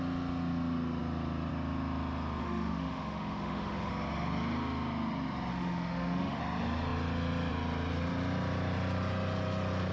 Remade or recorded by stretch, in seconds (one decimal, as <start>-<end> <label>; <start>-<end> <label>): 0.0-2.4 recorded; 2.4-3.9 remade; 3.9-5.5 recorded; 5.5-6.4 remade; 6.4-9.9 recorded